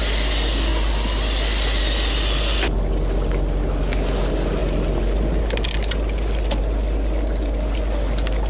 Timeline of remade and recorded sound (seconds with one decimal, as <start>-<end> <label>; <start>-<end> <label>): 0.0-8.5 recorded